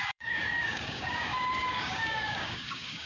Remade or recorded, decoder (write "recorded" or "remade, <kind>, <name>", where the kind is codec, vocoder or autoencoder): remade, codec, DAC